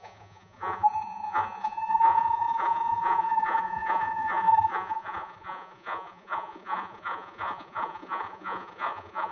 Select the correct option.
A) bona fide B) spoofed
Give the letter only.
B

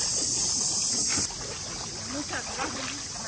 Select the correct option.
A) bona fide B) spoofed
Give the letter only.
A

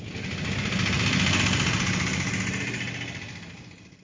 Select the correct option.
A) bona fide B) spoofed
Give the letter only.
A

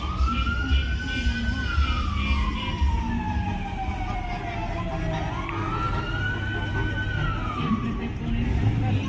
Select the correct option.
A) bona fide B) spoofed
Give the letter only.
A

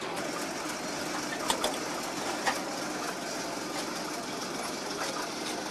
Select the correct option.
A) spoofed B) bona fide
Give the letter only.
B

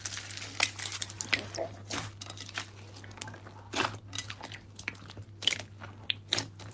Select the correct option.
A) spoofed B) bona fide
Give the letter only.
B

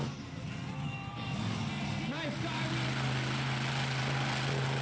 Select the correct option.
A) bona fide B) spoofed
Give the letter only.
A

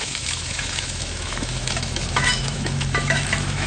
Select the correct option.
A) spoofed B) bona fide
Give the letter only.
A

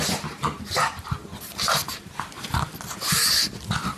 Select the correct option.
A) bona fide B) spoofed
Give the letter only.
A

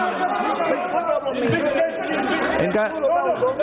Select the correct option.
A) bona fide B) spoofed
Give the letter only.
A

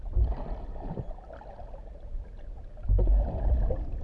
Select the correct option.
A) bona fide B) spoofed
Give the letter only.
A